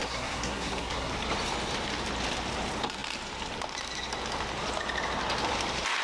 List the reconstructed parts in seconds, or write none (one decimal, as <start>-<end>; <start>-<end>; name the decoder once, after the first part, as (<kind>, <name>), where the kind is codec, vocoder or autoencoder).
0.0-1.1 (codec, SNAC)